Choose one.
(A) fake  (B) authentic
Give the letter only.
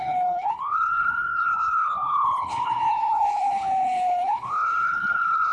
A